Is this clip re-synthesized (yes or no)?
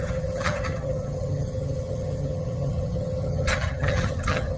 yes